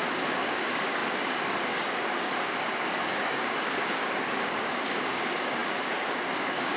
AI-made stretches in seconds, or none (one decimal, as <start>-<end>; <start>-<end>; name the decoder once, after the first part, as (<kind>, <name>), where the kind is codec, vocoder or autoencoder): 0.0-6.8 (codec, DAC)